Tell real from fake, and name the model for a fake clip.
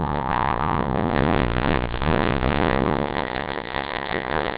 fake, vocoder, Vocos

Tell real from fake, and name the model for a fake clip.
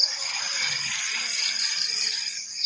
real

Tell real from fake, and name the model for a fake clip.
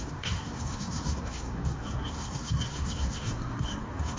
fake, codec, SNAC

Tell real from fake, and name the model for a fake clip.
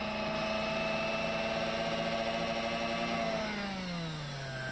real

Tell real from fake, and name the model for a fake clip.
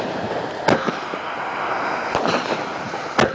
real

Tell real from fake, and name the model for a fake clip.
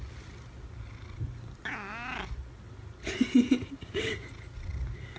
real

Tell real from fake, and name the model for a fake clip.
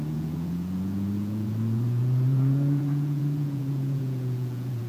fake, vocoder, Vocos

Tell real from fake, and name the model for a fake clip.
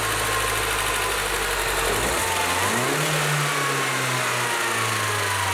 real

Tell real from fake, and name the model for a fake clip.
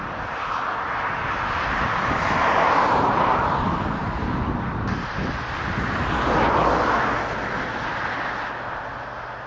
real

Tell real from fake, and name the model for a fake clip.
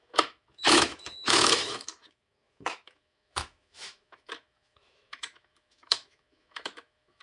fake, autoencoder, DAC-VAE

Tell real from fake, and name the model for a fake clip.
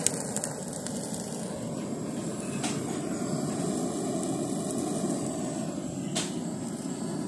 real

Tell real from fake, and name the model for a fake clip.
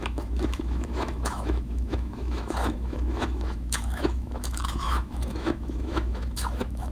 fake, autoencoder, DAC-VAE